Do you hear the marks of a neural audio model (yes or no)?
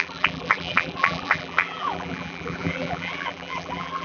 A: yes